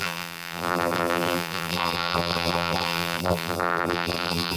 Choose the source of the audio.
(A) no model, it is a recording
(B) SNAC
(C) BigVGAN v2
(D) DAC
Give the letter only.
C